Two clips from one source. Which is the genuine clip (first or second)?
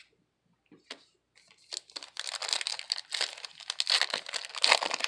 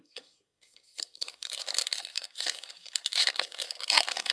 first